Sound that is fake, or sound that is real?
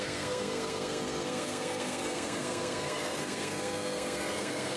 fake